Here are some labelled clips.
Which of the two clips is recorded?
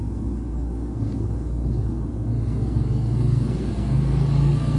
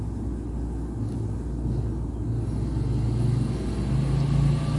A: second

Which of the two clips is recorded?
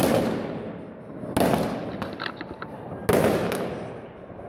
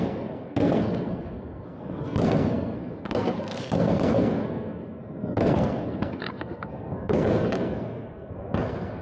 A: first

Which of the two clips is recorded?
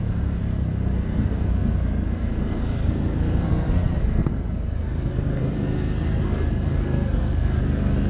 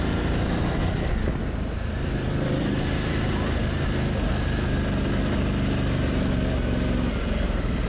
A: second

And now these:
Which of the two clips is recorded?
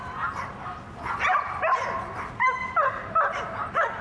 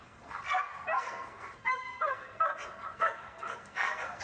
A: first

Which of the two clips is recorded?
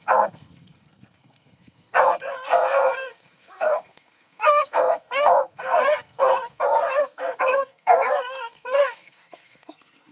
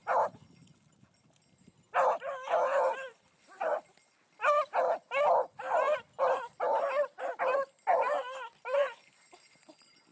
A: second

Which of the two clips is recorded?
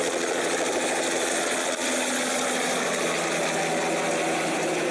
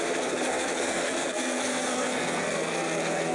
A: first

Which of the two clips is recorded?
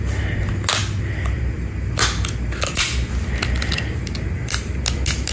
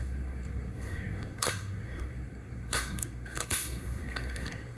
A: first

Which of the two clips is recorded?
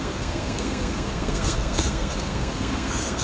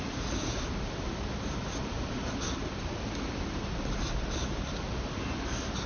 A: second